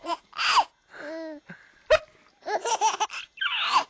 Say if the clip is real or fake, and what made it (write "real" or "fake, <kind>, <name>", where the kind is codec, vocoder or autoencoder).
real